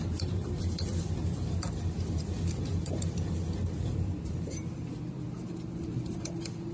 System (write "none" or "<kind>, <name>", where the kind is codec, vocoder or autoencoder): vocoder, BigVGAN v2